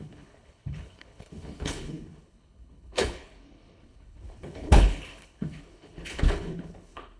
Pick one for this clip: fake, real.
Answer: fake